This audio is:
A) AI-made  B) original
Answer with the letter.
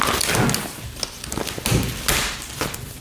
B